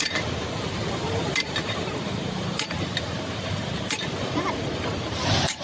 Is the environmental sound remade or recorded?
remade